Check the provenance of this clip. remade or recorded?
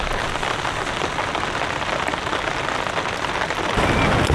recorded